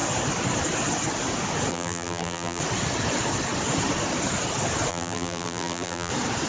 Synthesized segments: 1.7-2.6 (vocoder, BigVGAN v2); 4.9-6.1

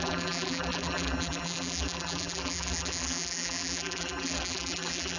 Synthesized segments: 0.0-5.2 (vocoder, BigVGAN v2)

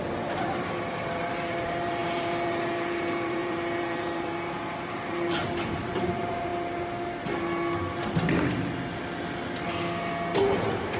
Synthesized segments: 0.0-6.5 (vocoder, BigVGAN v2)

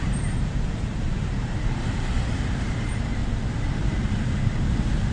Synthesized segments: 0.0-3.2 (vocoder, BigVGAN v2); 4.0-5.1

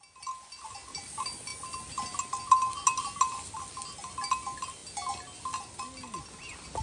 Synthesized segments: none

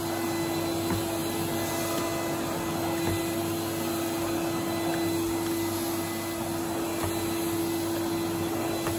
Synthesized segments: none

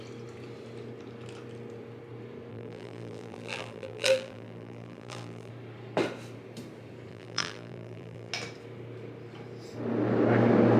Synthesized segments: 2.5-5.5 (vocoder, BigVGAN v2); 7.1-8.3